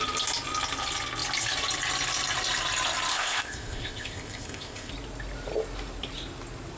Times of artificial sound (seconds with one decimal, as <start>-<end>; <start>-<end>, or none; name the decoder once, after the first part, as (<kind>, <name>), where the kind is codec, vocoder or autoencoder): 3.1-4.9 (codec, ZipCodec)